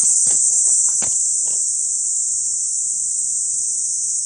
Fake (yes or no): no